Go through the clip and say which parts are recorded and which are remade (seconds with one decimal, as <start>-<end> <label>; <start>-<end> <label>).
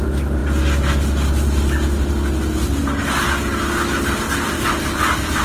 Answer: 0.0-5.4 recorded